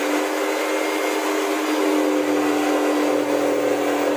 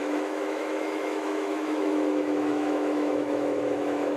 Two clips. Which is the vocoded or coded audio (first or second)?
second